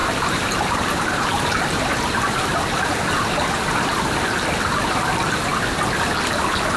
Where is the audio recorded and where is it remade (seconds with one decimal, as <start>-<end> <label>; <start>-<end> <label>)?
0.0-3.8 remade; 3.8-5.5 recorded; 5.5-6.8 remade